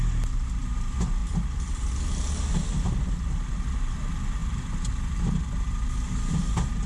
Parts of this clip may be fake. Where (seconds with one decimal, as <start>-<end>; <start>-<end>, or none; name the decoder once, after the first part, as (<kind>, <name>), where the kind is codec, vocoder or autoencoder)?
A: none